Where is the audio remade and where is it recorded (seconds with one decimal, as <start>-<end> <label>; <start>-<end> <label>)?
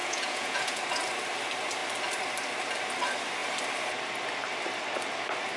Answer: 0.0-0.8 remade; 0.8-5.6 recorded